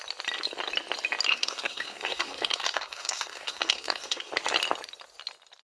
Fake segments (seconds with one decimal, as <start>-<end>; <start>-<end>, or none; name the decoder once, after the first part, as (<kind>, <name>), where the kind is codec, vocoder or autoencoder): 1.3-4.3 (codec, SNAC)